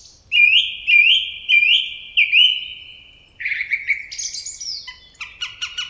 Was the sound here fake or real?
real